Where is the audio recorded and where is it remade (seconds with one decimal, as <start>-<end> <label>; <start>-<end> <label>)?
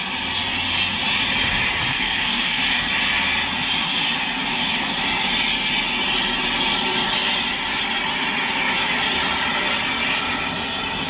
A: 0.0-1.9 recorded; 1.9-2.6 remade; 2.6-11.1 recorded